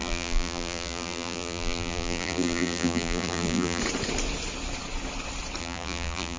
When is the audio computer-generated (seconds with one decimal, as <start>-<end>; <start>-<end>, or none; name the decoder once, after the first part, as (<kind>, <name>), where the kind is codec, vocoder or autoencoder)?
0.0-3.8 (vocoder, BigVGAN v2); 5.6-6.4